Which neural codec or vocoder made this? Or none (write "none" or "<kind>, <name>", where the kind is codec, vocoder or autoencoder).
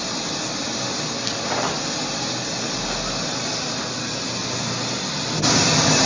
none